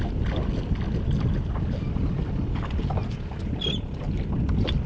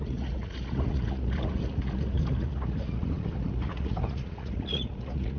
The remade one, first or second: second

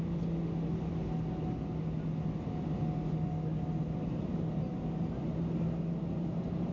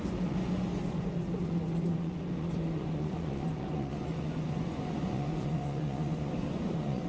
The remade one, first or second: second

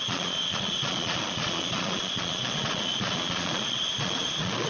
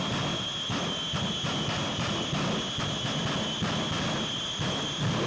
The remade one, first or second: first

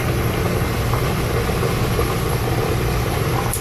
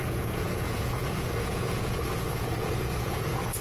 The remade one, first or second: second